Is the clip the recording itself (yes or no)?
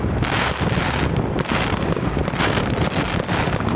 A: no